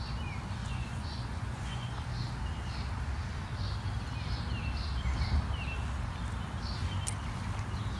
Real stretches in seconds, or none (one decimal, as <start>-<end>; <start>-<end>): 0.0-0.6; 2.0-8.0